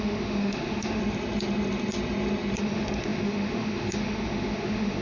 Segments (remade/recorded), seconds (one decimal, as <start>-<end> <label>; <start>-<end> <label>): 0.0-1.0 remade; 1.0-2.6 recorded; 2.6-5.0 remade